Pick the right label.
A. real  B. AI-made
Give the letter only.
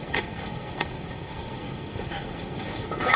B